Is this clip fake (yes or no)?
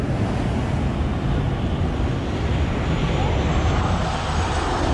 no